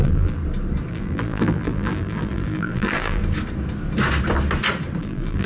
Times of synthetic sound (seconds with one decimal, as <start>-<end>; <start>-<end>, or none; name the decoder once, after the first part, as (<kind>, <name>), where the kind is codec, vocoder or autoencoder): 0.0-0.4 (vocoder, BigVGAN v2); 0.9-3.2; 5.0-5.5